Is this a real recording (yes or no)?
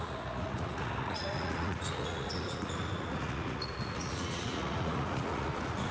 no